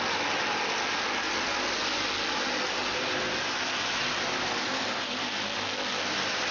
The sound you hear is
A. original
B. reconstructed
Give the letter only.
A